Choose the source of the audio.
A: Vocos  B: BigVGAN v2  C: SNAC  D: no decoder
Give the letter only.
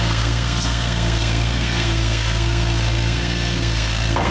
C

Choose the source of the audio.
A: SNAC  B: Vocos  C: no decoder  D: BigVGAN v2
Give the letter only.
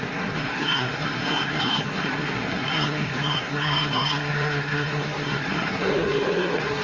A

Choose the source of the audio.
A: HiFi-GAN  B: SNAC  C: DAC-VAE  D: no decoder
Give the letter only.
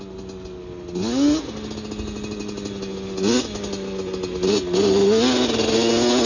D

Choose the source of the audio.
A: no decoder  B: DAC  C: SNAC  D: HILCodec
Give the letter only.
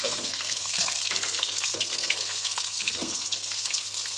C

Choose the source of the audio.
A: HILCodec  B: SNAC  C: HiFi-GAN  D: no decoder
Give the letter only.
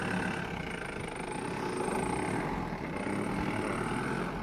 D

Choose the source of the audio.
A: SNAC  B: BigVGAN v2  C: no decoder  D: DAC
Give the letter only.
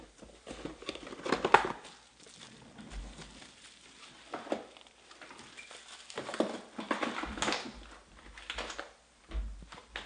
C